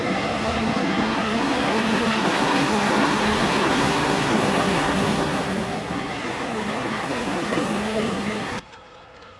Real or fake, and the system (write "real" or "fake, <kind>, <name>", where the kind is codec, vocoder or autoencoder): fake, codec, SNAC